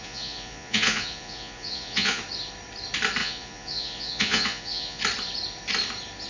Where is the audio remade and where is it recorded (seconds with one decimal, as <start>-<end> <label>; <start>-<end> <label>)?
0.0-2.2 remade; 2.2-3.2 recorded; 3.2-5.0 remade; 5.0-6.3 recorded